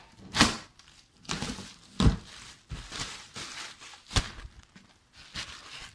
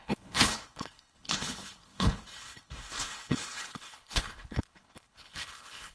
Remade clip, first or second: second